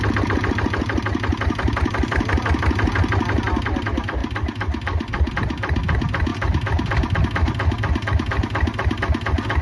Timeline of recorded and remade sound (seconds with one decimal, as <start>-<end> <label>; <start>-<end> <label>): 0.0-9.6 recorded